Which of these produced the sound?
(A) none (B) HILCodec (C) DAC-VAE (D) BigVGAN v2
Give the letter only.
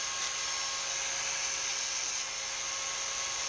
A